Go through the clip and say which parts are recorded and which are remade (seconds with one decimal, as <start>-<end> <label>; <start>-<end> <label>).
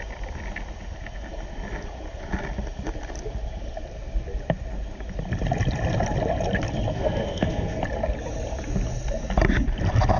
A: 0.0-6.9 recorded; 6.9-7.8 remade; 7.8-10.2 recorded